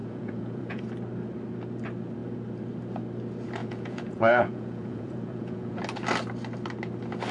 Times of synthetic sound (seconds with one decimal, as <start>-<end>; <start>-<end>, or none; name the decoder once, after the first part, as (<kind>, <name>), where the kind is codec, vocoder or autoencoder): 0.0-0.8 (vocoder, Vocos); 3.6-5.8